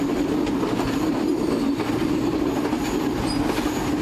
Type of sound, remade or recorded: recorded